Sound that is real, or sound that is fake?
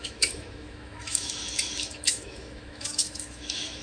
fake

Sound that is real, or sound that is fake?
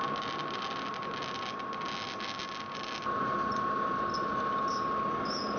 real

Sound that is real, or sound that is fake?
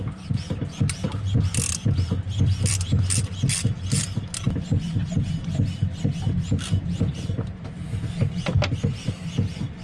real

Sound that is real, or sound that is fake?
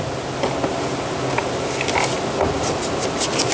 real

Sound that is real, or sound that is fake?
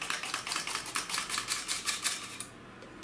real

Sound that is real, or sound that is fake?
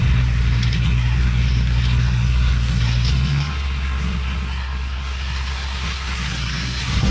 fake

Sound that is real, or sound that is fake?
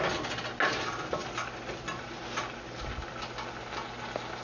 real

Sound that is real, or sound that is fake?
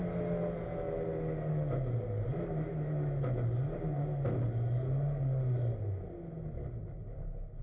real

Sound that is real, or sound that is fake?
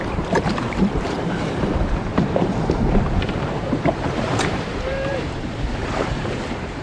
fake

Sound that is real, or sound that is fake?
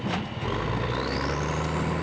real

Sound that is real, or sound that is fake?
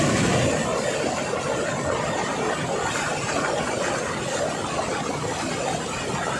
real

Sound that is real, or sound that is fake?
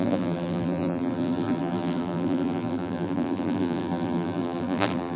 fake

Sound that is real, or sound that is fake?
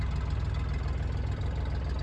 real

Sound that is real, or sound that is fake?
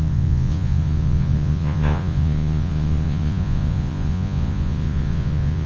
fake